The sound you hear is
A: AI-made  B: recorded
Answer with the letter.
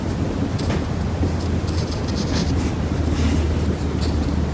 B